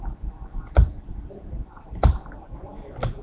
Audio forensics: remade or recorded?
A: remade